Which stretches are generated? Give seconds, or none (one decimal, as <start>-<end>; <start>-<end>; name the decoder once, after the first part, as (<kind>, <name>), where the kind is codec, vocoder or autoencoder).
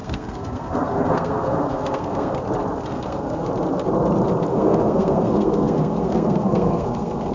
0.0-2.4 (codec, SNAC); 2.9-3.5; 4.5-7.3